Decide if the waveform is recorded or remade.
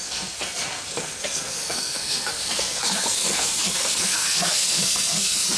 remade